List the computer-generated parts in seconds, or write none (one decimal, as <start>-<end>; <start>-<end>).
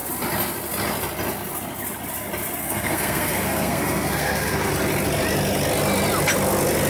2.6-4.7